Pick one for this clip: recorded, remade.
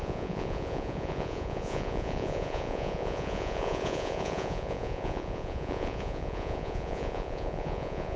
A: remade